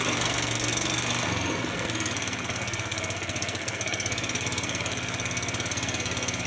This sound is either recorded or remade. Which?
remade